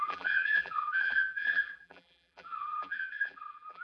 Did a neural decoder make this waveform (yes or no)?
yes